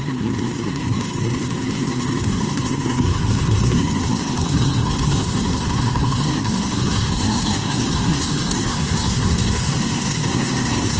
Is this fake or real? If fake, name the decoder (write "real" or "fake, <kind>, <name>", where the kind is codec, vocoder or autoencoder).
fake, codec, SNAC